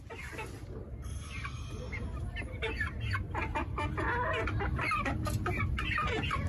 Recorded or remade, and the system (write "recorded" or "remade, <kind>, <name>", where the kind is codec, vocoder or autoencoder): recorded